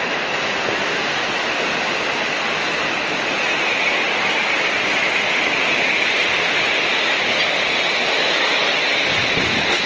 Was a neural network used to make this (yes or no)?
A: no